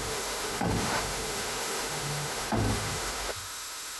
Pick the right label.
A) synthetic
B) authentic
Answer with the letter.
A